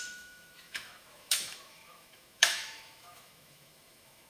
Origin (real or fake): fake